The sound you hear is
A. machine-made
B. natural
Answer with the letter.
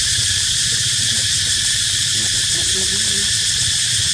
A